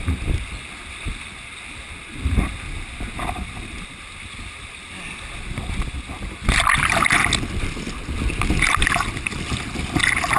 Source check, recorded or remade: recorded